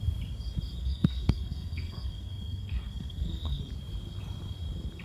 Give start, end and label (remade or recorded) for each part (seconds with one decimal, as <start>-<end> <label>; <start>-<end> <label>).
0.0-0.8 recorded; 0.8-3.6 remade; 3.6-5.0 recorded